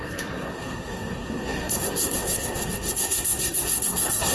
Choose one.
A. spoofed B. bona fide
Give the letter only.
A